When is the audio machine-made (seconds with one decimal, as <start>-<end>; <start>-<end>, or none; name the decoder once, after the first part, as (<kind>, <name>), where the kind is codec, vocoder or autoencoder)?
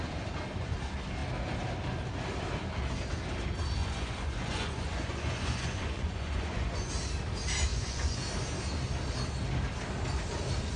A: 3.8-6.9 (vocoder, Vocos); 7.7-8.2